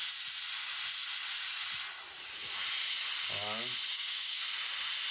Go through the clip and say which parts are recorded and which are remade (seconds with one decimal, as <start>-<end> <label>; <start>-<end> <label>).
0.0-3.9 recorded; 3.9-4.4 remade; 4.4-5.1 recorded